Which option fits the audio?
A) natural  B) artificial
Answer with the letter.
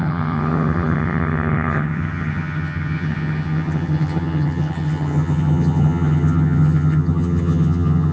B